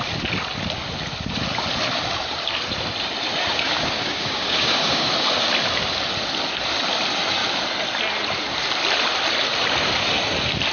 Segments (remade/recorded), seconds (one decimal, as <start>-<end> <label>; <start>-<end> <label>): 0.0-3.5 recorded; 3.5-5.1 remade; 5.1-10.7 recorded